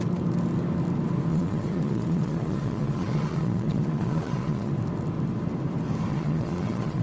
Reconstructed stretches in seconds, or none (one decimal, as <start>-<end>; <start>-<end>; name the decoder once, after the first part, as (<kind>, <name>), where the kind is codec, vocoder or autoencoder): 1.3-4.7 (vocoder, Vocos); 6.1-7.0